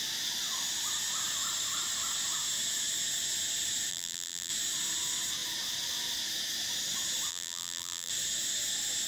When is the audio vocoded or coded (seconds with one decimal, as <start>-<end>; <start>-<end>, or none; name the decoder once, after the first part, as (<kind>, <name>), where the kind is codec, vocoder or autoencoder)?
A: 3.9-4.5 (vocoder, BigVGAN v2); 7.3-8.1

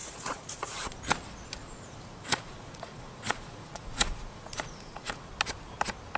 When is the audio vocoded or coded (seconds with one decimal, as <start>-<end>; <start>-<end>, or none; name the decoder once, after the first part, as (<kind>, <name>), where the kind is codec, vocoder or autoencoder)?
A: 0.0-0.9 (vocoder, Vocos); 1.6-5.3

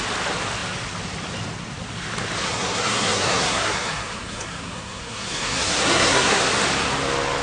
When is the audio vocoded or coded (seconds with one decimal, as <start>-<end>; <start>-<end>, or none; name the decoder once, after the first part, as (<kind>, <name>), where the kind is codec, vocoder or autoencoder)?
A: 2.4-6.4 (codec, SNAC)

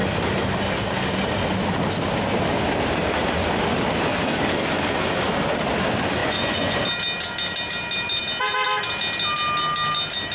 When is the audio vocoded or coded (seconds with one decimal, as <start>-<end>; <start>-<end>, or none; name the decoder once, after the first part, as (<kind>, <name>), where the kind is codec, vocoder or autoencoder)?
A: 6.2-6.8 (vocoder, Vocos)

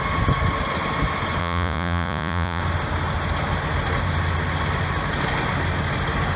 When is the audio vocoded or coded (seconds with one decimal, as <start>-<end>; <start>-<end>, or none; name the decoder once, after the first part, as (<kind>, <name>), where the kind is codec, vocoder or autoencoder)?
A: 1.4-2.6 (vocoder, Vocos)

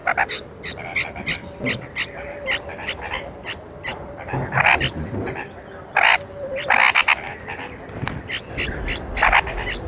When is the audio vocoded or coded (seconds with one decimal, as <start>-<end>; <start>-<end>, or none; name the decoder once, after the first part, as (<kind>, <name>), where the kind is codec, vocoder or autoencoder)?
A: none

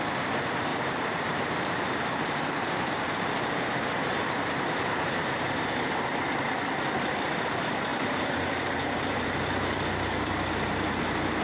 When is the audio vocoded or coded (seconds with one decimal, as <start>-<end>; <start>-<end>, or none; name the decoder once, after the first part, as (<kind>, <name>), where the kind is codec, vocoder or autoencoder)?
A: 0.7-5.9 (vocoder, BigVGAN v2); 7.9-11.0